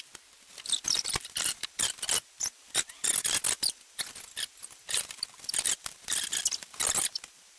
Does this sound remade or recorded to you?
recorded